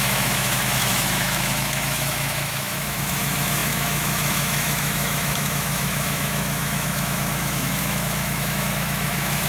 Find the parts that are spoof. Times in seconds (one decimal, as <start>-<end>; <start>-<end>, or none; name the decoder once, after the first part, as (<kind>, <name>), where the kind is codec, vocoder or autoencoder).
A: 0.0-9.5 (autoencoder, DAC-VAE)